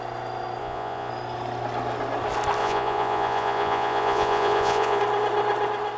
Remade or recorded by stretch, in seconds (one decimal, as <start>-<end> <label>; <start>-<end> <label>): 0.0-0.6 recorded; 0.6-1.1 remade; 1.1-2.6 recorded; 2.6-5.0 remade; 5.0-6.0 recorded